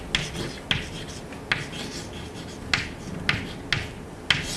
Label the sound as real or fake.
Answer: real